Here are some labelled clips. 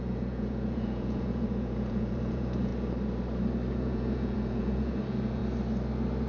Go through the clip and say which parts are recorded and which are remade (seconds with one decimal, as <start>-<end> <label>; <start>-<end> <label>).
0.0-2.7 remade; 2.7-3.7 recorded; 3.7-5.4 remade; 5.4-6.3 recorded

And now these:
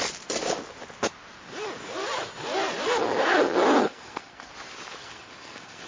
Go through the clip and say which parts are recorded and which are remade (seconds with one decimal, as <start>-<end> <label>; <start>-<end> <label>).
0.0-3.8 recorded; 3.8-4.5 remade; 4.5-5.0 recorded; 5.0-5.9 remade

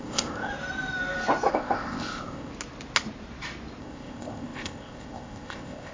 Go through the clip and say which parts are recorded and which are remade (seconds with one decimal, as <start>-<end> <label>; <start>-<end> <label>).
0.0-0.5 remade; 0.5-1.5 recorded; 1.5-2.5 remade; 2.5-3.8 recorded; 3.8-5.9 remade